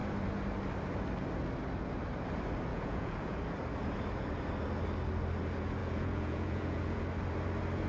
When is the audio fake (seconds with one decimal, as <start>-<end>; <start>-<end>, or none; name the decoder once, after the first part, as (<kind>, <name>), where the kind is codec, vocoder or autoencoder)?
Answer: 2.7-3.4 (vocoder, Vocos); 5.8-7.0